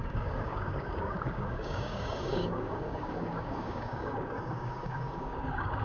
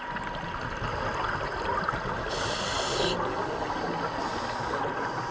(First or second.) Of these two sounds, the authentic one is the second